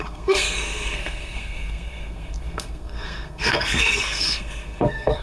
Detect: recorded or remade remade